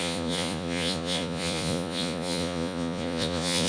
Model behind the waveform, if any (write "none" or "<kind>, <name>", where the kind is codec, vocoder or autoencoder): vocoder, Vocos